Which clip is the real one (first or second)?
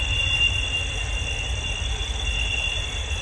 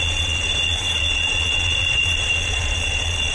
first